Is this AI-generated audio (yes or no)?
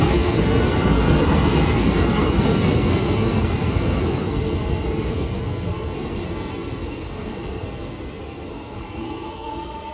yes